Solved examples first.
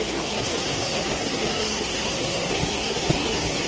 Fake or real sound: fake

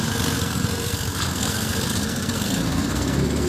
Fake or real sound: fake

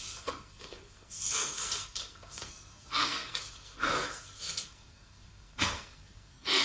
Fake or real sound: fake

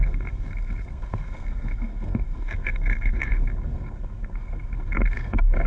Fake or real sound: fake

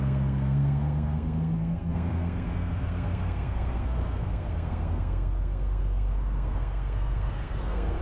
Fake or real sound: fake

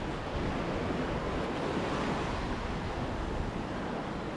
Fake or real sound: real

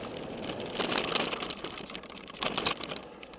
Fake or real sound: real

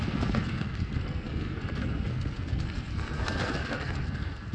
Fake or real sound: fake